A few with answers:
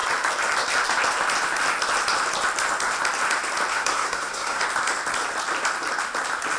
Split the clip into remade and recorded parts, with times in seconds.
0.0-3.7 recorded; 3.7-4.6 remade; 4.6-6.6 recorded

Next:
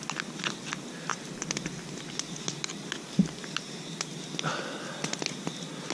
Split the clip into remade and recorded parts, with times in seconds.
0.0-5.9 recorded

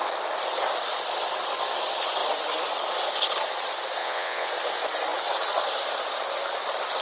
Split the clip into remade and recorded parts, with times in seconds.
0.0-4.0 recorded; 4.0-4.5 remade; 4.5-7.0 recorded